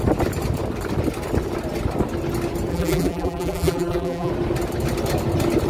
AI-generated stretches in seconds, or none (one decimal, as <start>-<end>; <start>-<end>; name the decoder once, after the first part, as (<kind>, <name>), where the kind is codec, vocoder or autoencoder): 2.7-4.3 (vocoder, BigVGAN v2)